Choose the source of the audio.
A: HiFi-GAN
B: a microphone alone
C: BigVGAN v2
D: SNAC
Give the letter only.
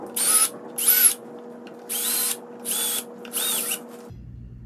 B